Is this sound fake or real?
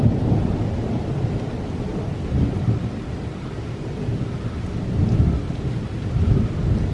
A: real